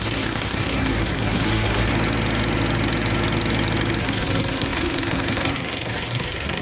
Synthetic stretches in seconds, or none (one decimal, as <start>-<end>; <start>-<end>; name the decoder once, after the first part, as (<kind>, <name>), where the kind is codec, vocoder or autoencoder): 0.0-1.9 (codec, SNAC); 4.0-6.6